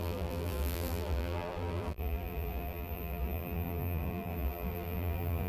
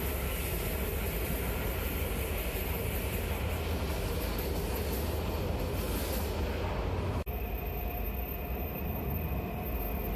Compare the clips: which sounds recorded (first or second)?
second